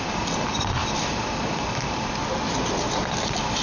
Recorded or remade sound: recorded